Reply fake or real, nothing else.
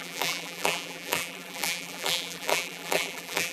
fake